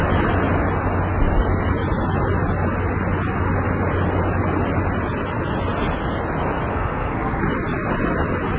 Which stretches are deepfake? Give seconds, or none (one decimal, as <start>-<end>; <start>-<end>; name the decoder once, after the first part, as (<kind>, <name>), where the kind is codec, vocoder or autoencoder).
6.7-7.4 (codec, SNAC)